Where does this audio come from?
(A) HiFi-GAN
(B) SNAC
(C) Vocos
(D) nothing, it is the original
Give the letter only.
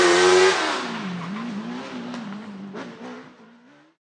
D